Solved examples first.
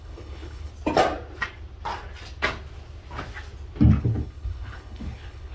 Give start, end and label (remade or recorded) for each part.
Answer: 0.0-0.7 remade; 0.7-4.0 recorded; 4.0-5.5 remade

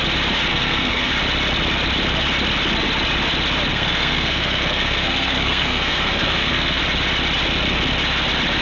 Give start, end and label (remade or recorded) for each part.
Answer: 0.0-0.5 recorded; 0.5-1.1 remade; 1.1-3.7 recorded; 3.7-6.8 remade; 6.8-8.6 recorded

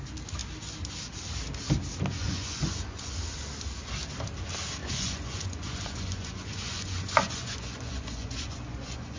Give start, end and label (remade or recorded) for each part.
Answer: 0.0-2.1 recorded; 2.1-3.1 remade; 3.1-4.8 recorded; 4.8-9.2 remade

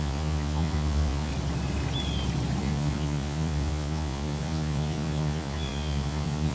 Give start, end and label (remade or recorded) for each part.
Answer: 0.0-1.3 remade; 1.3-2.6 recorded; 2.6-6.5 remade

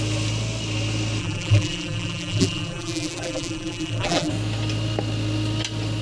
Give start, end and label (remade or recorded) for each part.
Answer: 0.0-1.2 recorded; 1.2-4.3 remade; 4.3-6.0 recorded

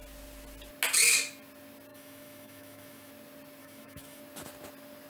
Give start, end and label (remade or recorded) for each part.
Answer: 0.0-1.9 recorded; 1.9-3.1 remade; 3.1-3.6 recorded; 3.6-4.2 remade; 4.2-5.1 recorded

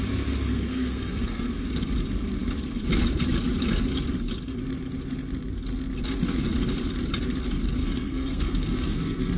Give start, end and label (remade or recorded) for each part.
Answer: 0.0-0.5 recorded; 0.5-1.5 remade; 1.5-7.8 recorded; 7.8-9.4 remade

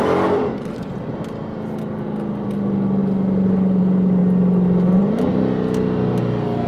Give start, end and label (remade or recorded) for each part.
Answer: 0.0-6.7 recorded